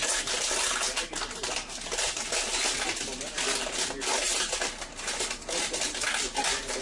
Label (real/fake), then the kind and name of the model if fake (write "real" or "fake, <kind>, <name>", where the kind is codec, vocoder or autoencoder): real